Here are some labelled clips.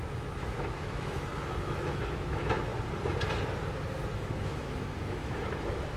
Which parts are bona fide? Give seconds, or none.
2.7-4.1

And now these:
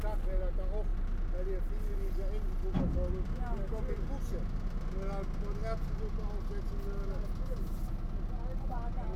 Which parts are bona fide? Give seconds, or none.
0.0-9.2

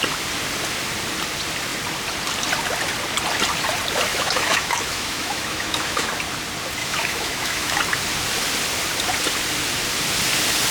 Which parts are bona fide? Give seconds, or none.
0.0-4.1; 6.1-6.8; 7.8-10.7

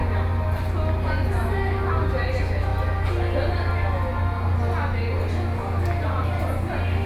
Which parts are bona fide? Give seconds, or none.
0.0-7.1

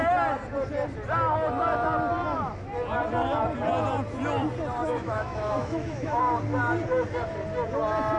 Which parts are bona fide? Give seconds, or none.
0.0-4.8; 6.2-8.2

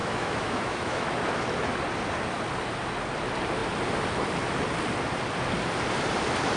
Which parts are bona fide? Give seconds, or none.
1.0-6.6

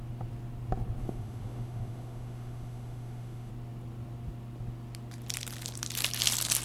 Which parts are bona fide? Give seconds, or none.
0.0-1.0; 3.5-6.6